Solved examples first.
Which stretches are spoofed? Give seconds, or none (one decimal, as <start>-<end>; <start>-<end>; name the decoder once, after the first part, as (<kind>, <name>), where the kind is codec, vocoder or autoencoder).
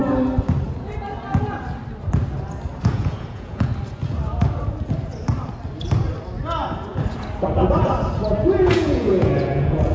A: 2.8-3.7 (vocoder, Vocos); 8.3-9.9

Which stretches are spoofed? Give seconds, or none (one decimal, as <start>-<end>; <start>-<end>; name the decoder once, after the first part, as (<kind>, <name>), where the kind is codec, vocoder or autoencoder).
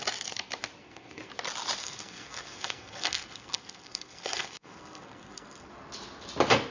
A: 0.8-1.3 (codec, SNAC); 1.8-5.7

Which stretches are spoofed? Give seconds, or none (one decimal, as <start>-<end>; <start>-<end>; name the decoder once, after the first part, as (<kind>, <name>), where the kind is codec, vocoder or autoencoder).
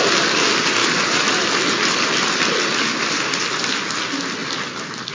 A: none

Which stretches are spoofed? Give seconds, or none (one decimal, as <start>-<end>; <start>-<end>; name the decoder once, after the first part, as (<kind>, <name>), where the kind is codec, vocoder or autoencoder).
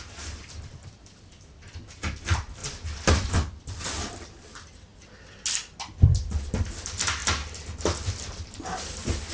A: none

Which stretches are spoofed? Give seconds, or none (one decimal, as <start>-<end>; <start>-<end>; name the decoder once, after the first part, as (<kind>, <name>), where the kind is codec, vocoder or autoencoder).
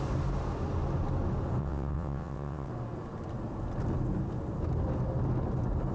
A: 1.6-2.7 (vocoder, WaveNeXt)